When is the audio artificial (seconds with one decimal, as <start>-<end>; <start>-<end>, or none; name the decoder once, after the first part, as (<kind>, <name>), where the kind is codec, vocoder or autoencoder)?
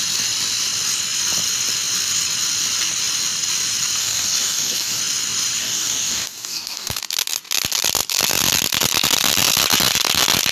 4.0-5.0 (codec, DAC); 5.6-7.0